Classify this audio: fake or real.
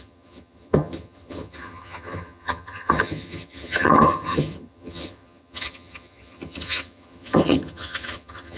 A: fake